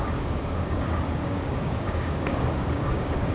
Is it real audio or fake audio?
fake